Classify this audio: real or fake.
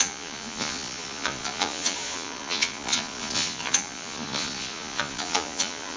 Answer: fake